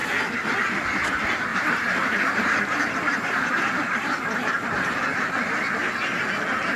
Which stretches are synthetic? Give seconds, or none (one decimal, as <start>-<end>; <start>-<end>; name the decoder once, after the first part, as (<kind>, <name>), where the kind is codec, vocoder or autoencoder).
1.5-5.6 (vocoder, BigVGAN v2)